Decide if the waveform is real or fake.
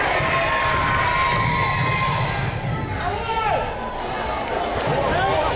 real